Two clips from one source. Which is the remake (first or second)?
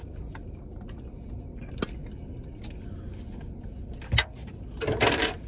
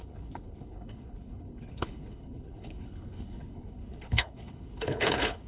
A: second